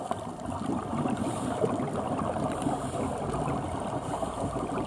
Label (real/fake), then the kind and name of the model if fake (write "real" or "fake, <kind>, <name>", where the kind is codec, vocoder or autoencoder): fake, vocoder, BigVGAN v2